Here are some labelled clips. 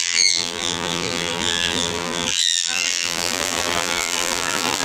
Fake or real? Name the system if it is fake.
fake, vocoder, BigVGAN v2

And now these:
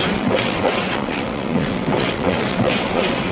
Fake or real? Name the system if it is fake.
fake, vocoder, WaveNeXt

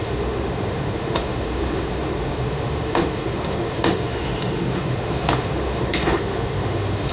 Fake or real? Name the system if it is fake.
fake, autoencoder, DAC-VAE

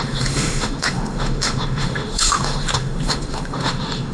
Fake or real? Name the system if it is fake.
fake, autoencoder, DAC-VAE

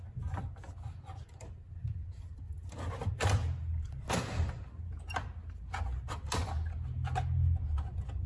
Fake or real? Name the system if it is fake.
real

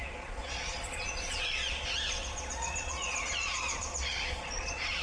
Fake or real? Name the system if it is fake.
fake, vocoder, Vocos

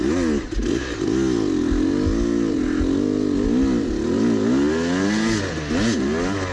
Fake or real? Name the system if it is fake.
real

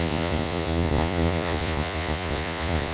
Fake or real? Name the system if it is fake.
fake, vocoder, Vocos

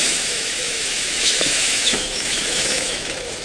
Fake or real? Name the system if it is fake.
fake, autoencoder, DAC-VAE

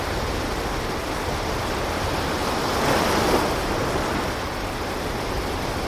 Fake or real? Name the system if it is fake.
real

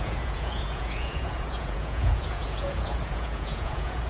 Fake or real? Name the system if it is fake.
fake, vocoder, Vocos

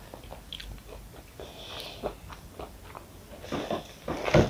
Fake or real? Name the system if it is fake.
real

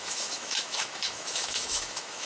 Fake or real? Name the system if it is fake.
fake, autoencoder, DAC-VAE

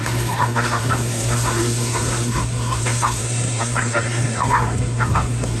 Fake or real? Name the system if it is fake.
fake, codec, SNAC